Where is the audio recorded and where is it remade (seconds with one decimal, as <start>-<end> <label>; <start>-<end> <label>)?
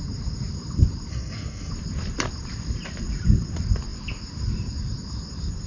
0.0-1.1 recorded; 1.1-1.7 remade; 1.7-5.7 recorded